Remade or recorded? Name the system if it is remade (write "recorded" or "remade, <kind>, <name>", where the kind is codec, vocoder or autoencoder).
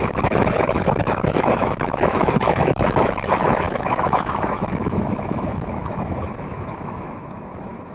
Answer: remade, autoencoder, DAC-VAE